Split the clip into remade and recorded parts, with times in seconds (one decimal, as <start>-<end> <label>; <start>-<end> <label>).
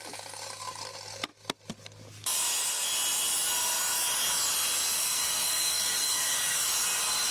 0.0-5.0 recorded; 5.0-6.7 remade; 6.7-7.3 recorded